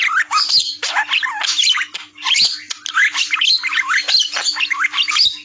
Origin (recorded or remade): recorded